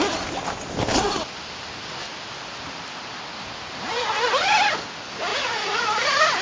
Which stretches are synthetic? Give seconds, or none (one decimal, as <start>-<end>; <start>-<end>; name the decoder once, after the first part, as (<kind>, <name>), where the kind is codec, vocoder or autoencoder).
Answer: 5.3-5.8 (vocoder, Vocos)